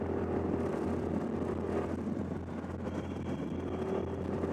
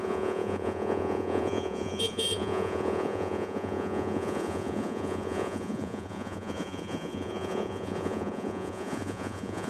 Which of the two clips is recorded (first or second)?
first